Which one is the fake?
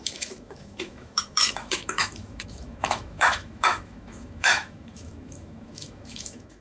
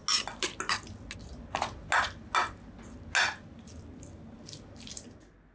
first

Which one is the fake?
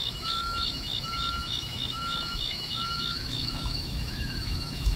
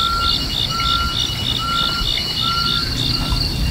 first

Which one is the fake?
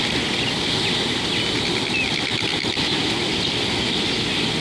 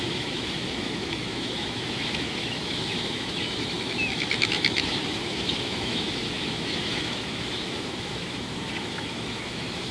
second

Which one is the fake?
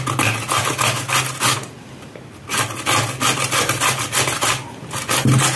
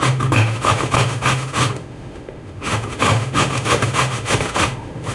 second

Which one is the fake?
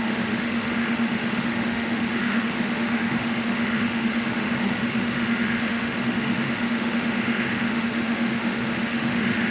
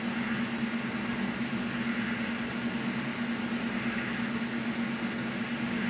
first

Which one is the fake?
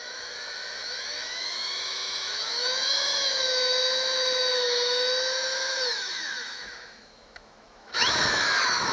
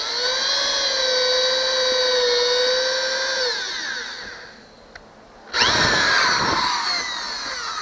first